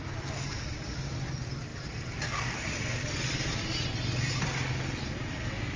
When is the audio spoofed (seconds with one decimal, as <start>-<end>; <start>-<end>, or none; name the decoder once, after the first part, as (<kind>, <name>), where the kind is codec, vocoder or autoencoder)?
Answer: none